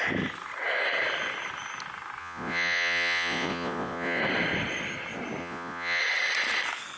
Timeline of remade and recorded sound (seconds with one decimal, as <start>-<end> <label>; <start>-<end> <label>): 0.0-2.2 recorded; 2.2-4.2 remade; 4.2-5.4 recorded; 5.4-6.0 remade; 6.0-7.0 recorded